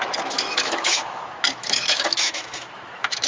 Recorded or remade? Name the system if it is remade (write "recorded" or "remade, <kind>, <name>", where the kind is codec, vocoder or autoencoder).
remade, autoencoder, DAC-VAE